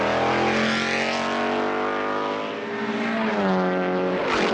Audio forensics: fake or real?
real